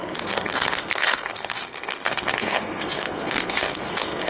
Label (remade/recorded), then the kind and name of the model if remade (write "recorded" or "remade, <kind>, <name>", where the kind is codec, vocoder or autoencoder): remade, codec, SNAC